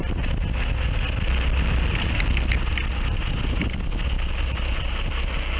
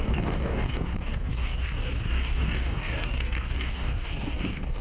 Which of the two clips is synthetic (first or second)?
second